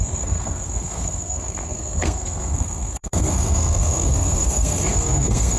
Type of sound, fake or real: fake